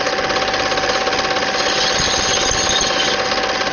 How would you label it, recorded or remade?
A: recorded